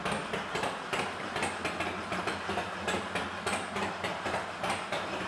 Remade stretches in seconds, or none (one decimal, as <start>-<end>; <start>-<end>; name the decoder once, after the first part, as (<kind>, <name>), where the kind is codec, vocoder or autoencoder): 0.0-1.4 (vocoder, BigVGAN v2); 3.5-5.3